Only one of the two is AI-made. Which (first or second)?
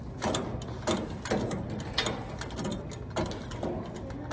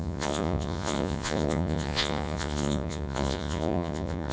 second